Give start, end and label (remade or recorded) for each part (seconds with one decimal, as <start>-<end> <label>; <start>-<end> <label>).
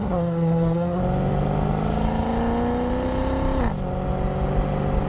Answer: 0.0-1.0 remade; 1.0-5.1 recorded